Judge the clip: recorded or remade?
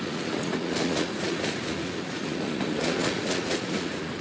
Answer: remade